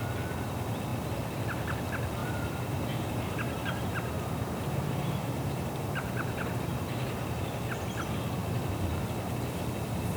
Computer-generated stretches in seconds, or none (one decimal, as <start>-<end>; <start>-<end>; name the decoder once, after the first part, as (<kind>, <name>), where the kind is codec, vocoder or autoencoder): 2.2-7.4 (vocoder, BigVGAN v2)